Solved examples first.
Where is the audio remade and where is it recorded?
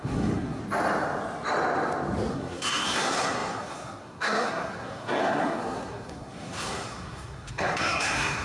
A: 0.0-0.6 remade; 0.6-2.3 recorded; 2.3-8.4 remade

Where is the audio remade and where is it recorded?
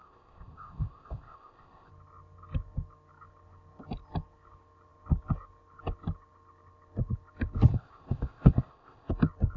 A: 0.0-1.9 remade; 1.9-7.7 recorded; 7.7-9.1 remade; 9.1-9.6 recorded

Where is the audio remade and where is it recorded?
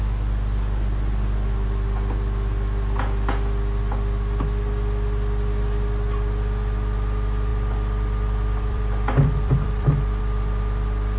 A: 0.0-7.5 recorded; 7.5-10.2 remade; 10.2-11.2 recorded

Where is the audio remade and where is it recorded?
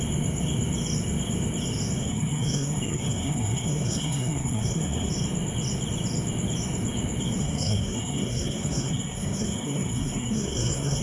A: 0.0-2.0 recorded; 2.0-5.1 remade; 5.1-7.4 recorded; 7.4-11.0 remade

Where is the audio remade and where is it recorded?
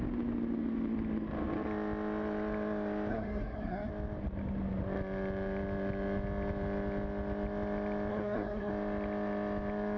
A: 0.0-3.1 recorded; 3.1-3.9 remade; 3.9-8.1 recorded; 8.1-8.7 remade; 8.7-10.0 recorded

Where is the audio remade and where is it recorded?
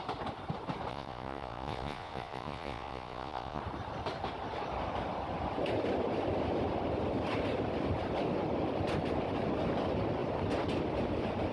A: 0.0-0.9 recorded; 0.9-3.6 remade; 3.6-11.5 recorded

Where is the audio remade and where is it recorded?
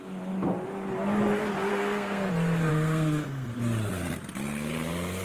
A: 0.0-1.7 recorded; 1.7-2.3 remade; 2.3-2.7 recorded; 2.7-3.5 remade; 3.5-5.2 recorded